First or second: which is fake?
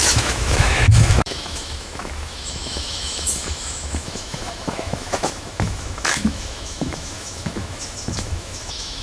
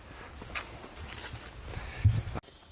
first